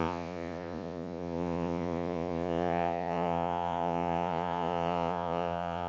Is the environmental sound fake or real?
fake